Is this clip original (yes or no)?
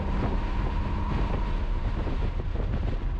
yes